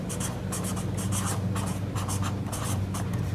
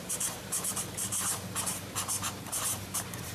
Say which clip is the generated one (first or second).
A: second